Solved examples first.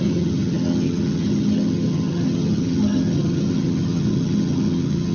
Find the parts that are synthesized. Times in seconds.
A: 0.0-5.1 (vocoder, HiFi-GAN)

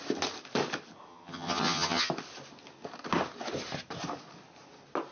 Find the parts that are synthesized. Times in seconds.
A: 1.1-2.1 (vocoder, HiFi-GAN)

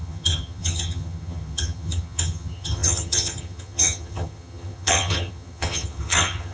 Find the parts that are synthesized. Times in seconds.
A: 0.0-6.5 (vocoder, HiFi-GAN)

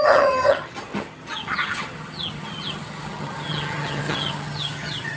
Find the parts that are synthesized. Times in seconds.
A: 0.0-5.2 (vocoder, HiFi-GAN)

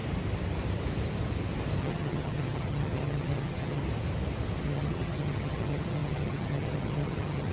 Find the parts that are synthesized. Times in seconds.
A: 1.8-3.8 (vocoder, HiFi-GAN); 4.6-7.5

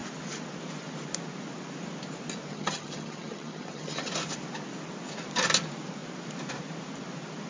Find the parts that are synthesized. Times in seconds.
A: 2.5-4.1 (vocoder, HiFi-GAN)

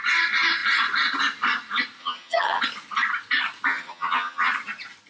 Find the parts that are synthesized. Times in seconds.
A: 2.0-2.6 (vocoder, HiFi-GAN); 3.7-4.5

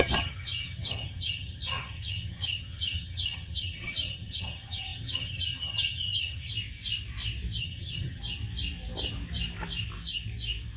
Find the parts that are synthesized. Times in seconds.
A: 0.0-6.5 (vocoder, HiFi-GAN); 7.6-8.2